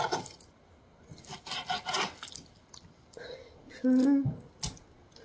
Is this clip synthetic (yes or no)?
no